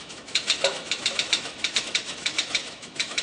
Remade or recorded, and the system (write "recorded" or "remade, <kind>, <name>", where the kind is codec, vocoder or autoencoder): remade, autoencoder, DAC-VAE